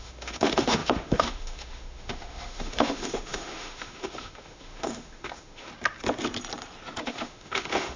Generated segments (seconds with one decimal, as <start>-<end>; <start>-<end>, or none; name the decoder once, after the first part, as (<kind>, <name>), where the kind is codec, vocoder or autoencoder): 0.0-5.7 (autoencoder, DAC-VAE); 7.0-8.0